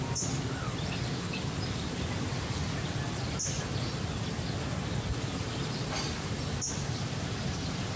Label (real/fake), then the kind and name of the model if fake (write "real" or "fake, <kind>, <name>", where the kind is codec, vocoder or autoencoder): real